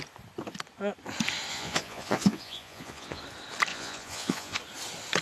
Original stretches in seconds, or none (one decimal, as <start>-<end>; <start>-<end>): 0.0-1.5; 3.2-3.7; 4.6-5.2